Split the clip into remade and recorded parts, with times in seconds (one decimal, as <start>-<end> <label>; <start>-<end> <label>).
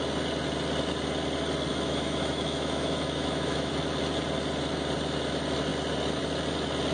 0.0-1.7 recorded; 1.7-3.7 remade; 3.7-6.9 recorded